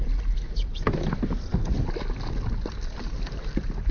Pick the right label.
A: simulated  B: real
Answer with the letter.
B